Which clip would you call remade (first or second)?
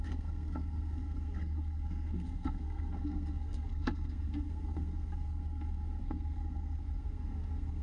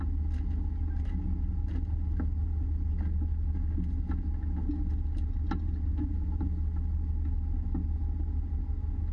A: first